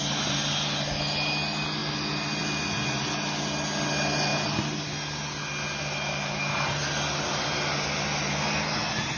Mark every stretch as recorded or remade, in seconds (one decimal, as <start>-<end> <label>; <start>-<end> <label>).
0.0-9.2 recorded